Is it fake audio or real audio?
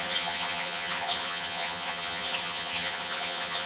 fake